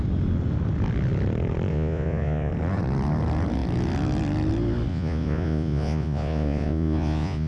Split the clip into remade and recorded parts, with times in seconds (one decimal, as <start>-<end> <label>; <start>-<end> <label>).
0.0-1.7 recorded; 1.7-2.5 remade; 2.5-4.9 recorded; 4.9-7.5 remade